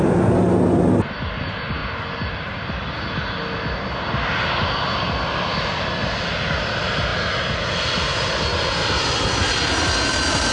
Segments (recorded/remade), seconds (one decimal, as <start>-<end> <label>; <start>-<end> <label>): 0.0-10.5 recorded

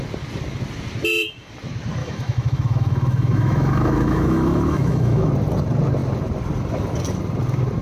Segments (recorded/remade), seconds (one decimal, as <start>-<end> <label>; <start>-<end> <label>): 0.0-2.0 recorded; 2.0-5.3 remade; 5.3-7.8 recorded